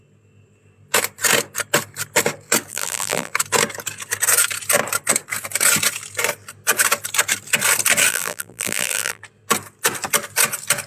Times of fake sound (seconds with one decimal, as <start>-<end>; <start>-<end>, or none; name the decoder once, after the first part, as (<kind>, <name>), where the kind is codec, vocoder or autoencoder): 2.7-3.3 (vocoder, BigVGAN v2); 8.1-9.2